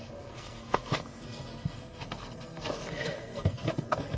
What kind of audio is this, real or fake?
fake